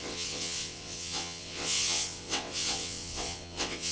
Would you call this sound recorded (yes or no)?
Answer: no